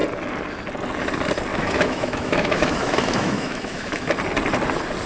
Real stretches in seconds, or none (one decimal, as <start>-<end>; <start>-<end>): 0.0-1.5; 4.1-5.1